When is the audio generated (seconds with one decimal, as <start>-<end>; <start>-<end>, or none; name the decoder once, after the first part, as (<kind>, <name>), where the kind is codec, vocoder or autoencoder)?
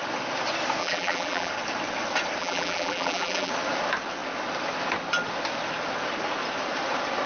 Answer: 0.8-1.5 (vocoder, BigVGAN v2); 2.4-3.5